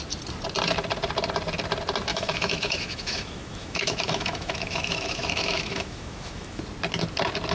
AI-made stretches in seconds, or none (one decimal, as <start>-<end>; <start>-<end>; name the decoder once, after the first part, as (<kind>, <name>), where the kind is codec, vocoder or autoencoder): 2.1-6.6 (autoencoder, DAC-VAE)